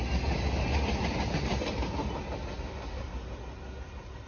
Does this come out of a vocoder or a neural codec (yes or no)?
no